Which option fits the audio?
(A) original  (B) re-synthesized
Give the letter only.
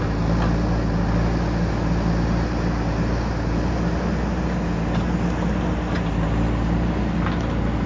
A